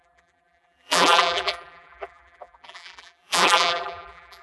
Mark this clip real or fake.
fake